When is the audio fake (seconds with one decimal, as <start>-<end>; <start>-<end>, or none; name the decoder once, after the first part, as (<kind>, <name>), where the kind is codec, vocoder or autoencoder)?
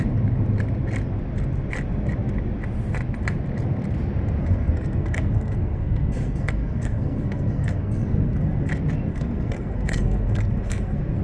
4.4-8.7 (codec, SNAC); 9.1-11.2